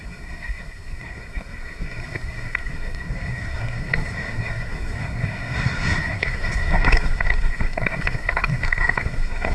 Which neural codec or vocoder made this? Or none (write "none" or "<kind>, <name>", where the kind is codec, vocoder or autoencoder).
codec, SNAC